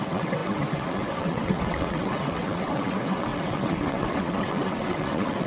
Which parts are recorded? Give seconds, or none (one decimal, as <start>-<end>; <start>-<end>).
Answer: none